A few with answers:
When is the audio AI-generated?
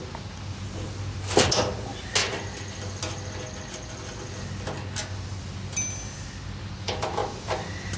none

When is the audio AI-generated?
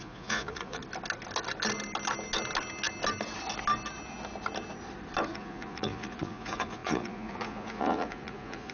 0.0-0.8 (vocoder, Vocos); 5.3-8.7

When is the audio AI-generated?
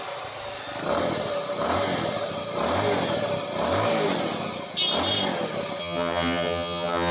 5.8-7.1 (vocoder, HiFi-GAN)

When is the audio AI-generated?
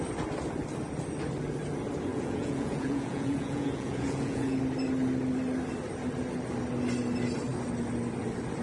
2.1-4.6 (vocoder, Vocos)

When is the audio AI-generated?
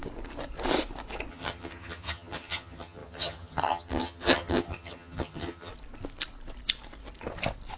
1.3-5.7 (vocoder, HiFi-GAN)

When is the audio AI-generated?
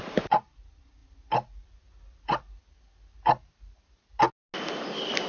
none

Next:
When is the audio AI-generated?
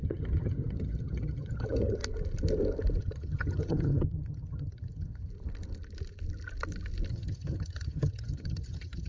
0.0-2.0 (vocoder, HiFi-GAN); 3.0-5.3; 7.1-9.1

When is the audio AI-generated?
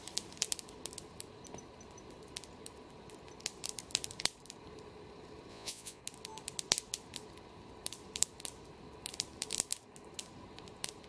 5.5-6.0 (vocoder, Vocos)